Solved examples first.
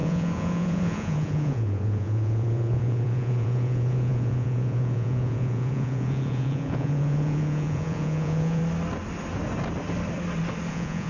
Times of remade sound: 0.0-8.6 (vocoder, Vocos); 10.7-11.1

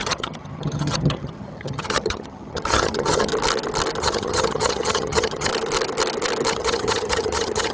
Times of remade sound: 0.0-3.3 (vocoder, HiFi-GAN); 4.0-5.5; 6.5-7.7

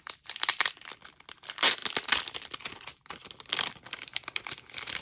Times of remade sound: none